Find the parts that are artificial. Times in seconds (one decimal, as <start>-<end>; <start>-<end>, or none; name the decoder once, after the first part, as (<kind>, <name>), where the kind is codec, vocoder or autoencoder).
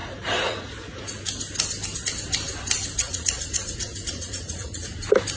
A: 0.0-1.2 (vocoder, Vocos); 3.0-4.9